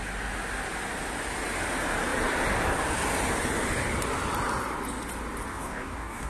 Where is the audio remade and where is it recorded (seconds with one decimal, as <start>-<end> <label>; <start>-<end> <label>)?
0.0-5.5 recorded; 5.5-6.3 remade

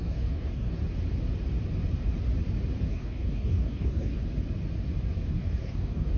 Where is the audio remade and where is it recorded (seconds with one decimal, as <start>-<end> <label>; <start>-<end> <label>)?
0.0-0.8 remade; 0.8-2.9 recorded; 2.9-4.2 remade; 4.2-5.3 recorded; 5.3-6.2 remade

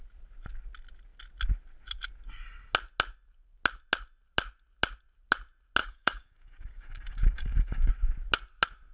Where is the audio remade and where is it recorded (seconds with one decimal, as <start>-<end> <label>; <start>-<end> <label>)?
0.0-5.8 recorded; 5.8-7.9 remade; 7.9-8.9 recorded

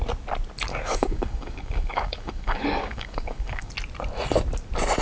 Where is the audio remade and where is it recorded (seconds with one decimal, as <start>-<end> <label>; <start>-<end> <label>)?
0.0-0.7 recorded; 0.7-3.7 remade; 3.7-5.0 recorded

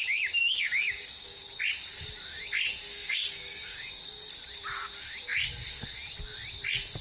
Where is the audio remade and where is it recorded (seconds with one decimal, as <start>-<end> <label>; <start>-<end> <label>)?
0.0-0.4 recorded; 0.4-1.6 remade; 1.6-2.9 recorded; 2.9-4.3 remade; 4.3-7.0 recorded